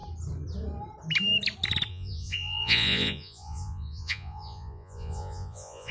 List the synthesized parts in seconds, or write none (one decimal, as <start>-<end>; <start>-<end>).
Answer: 1.9-5.9